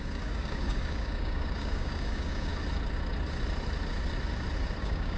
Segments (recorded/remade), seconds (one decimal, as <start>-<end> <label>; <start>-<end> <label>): 0.0-2.5 remade; 2.5-4.8 recorded; 4.8-5.2 remade

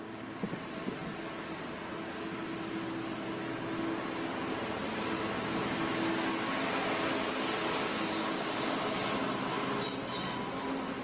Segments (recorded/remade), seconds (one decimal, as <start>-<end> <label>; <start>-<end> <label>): 0.0-7.9 recorded; 7.9-9.0 remade; 9.0-11.0 recorded

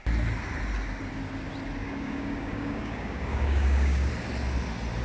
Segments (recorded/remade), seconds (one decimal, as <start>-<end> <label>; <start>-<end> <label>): 0.0-1.8 recorded; 1.8-4.1 remade; 4.1-5.0 recorded

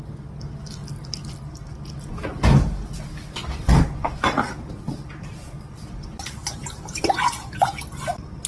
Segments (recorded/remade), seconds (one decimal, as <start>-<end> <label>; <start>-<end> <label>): 0.0-8.5 recorded

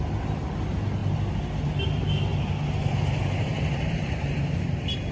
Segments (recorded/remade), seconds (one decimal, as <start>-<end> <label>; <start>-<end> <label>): 0.0-5.1 recorded

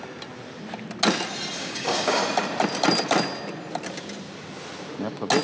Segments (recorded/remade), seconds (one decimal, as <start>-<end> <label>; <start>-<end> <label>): 0.0-1.6 recorded; 1.6-2.2 remade; 2.2-5.4 recorded

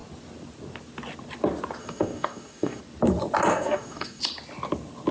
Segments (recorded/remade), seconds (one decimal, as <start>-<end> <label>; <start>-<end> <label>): 0.0-1.8 recorded; 1.8-2.8 remade; 2.8-3.5 recorded; 3.5-4.2 remade; 4.2-5.1 recorded